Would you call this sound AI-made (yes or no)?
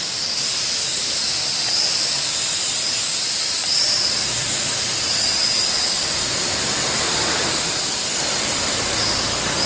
yes